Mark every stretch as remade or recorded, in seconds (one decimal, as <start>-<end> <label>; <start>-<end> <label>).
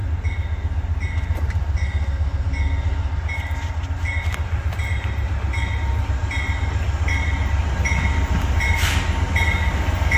0.0-10.2 recorded